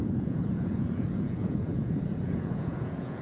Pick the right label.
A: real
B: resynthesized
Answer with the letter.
B